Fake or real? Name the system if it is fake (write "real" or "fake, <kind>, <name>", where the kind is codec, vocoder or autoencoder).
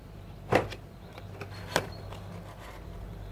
fake, vocoder, BigVGAN v2